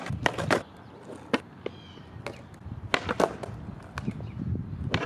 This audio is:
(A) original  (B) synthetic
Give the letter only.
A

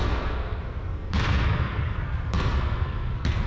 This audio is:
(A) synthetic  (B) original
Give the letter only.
A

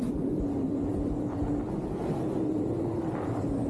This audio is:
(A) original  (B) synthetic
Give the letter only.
A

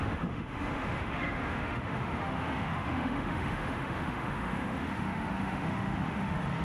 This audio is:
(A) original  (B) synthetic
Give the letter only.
B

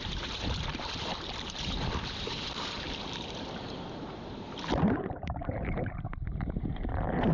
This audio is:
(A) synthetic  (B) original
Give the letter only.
A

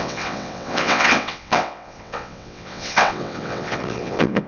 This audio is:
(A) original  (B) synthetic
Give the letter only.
B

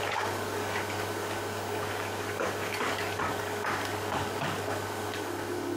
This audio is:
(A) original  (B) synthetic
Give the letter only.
B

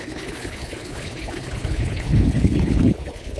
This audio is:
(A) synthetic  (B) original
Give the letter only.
A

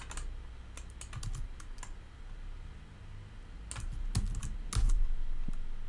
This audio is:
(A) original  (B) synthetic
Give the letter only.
A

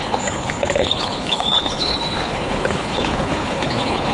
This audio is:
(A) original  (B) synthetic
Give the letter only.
B